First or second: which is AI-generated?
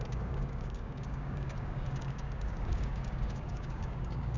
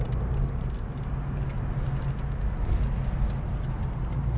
first